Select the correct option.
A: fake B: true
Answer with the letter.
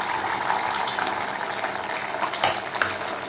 B